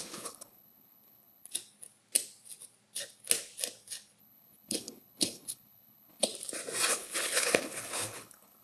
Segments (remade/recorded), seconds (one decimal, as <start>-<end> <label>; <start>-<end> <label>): 0.0-1.5 remade; 1.5-4.2 recorded; 4.2-6.3 remade; 6.3-6.9 recorded; 6.9-8.6 remade